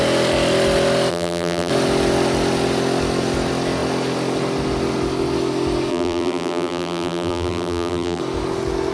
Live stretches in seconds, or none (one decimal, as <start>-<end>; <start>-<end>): 0.0-1.1; 1.7-5.9; 8.2-8.9